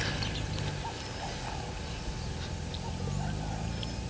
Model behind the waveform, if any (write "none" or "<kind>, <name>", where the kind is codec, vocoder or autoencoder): none